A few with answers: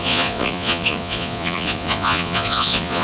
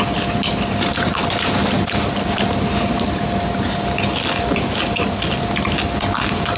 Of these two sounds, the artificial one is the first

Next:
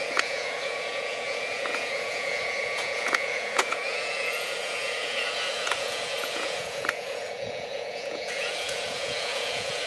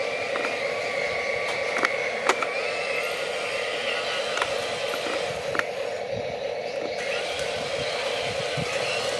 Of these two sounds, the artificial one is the first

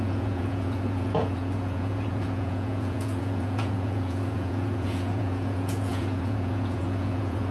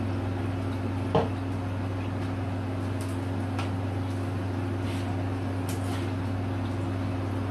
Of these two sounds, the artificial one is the first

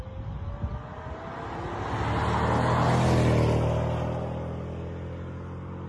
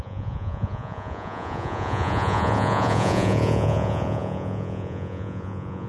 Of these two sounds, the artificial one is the second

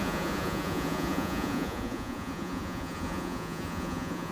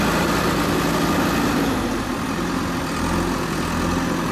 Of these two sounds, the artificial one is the first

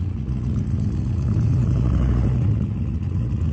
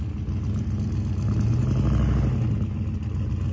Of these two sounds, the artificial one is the first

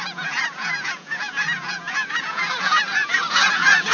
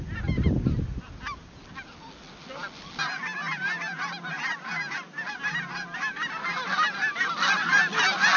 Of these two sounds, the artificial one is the first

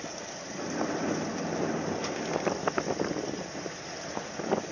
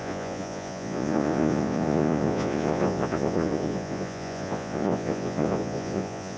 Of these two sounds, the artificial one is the second